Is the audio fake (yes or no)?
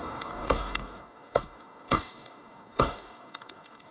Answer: yes